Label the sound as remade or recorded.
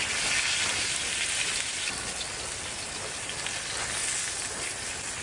recorded